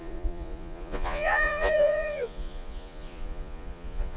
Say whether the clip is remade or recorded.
remade